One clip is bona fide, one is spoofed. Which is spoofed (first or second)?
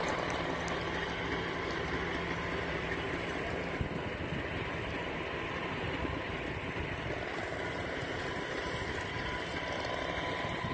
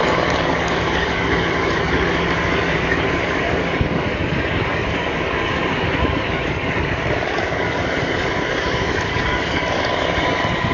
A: second